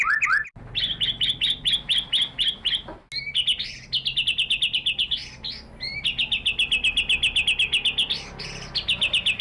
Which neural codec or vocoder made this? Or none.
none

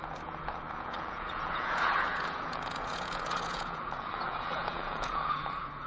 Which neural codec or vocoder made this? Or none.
vocoder, Vocos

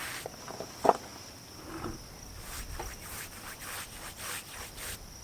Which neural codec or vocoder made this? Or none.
none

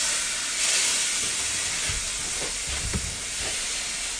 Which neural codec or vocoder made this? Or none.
none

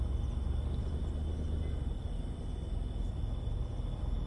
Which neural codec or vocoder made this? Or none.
none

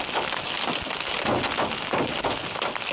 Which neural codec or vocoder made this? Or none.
none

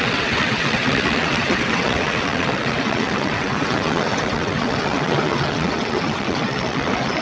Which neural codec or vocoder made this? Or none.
vocoder, WaveNeXt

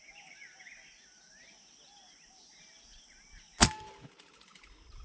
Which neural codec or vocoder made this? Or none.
none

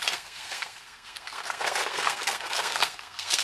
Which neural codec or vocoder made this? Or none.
codec, SNAC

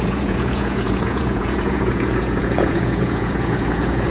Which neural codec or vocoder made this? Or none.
vocoder, Vocos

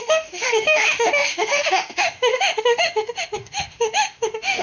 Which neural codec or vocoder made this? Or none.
autoencoder, DAC-VAE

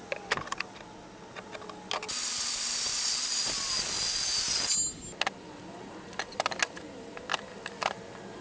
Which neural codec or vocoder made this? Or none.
none